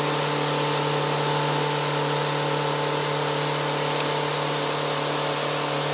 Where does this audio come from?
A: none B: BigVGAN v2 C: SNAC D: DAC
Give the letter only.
A